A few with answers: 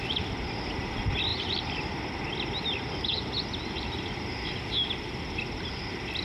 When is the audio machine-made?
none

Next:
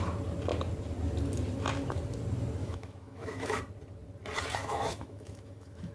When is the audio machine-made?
2.6-3.6 (autoencoder, DAC-VAE); 4.6-5.9

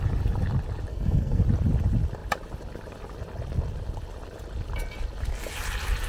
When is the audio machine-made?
0.9-1.4 (codec, SNAC)

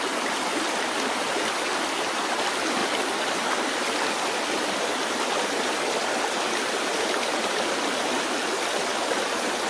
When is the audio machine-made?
none